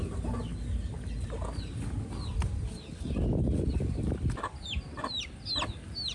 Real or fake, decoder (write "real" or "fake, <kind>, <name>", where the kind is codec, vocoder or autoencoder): real